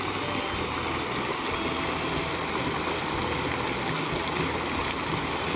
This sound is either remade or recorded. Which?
recorded